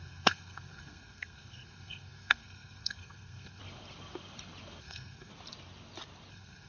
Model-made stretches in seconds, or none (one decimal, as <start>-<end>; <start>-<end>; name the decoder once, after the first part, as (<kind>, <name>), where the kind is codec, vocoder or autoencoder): 0.0-3.6 (codec, SNAC); 4.8-5.3; 6.3-6.7